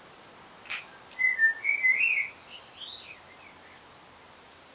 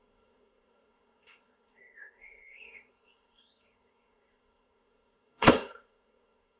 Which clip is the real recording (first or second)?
first